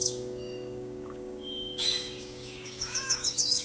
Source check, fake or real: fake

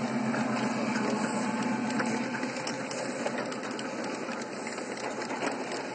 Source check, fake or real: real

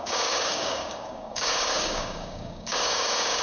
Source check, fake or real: fake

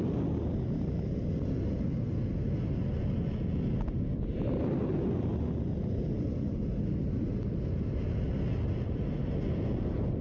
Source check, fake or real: real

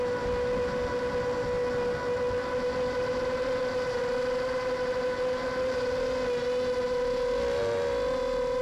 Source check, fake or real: real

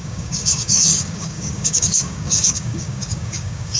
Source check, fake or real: fake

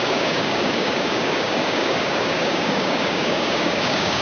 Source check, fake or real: fake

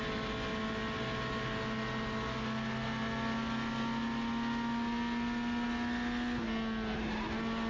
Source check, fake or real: real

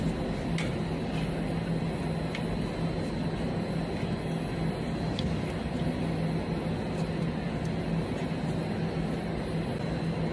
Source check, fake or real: real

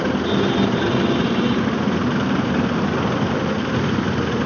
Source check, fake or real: real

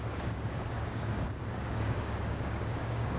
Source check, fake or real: fake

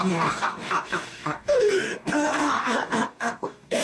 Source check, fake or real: fake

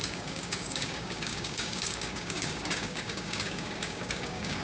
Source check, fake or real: fake